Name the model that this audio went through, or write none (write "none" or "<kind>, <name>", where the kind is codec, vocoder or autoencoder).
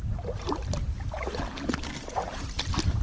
none